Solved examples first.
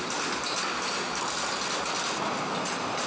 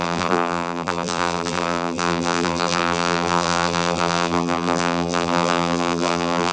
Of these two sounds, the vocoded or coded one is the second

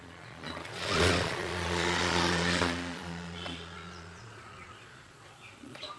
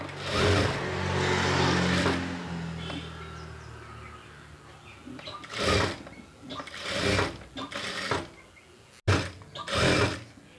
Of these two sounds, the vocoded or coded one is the first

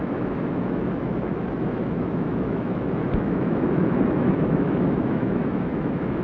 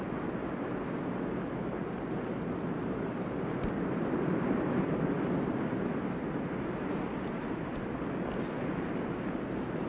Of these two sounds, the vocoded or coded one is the first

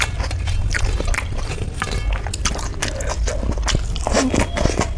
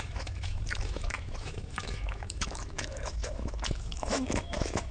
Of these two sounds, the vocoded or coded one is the second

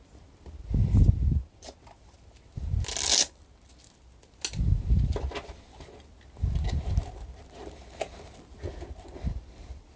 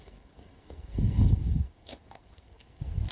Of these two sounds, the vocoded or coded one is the second